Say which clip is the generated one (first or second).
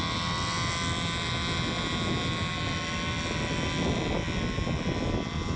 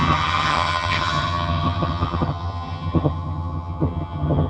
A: second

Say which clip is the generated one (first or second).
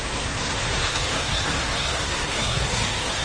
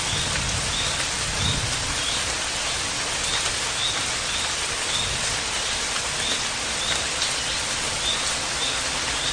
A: first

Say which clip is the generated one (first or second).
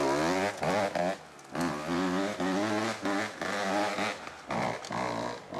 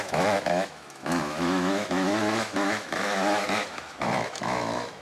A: second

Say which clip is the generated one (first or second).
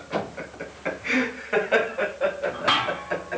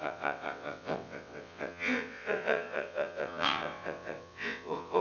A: second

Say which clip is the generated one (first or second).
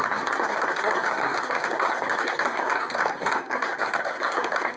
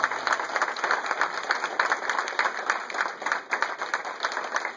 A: first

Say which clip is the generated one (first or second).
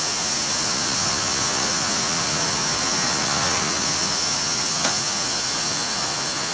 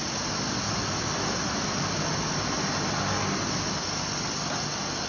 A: first